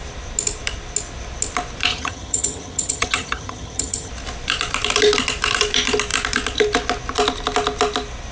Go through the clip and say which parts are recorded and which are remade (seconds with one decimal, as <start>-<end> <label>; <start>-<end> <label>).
0.0-1.9 recorded; 1.9-4.1 remade; 4.1-8.3 recorded